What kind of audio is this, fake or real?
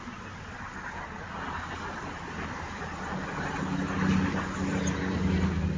real